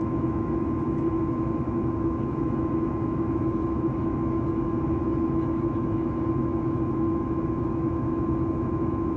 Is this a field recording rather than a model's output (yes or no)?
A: no